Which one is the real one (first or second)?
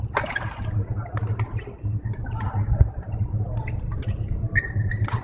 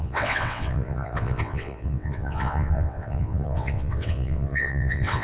first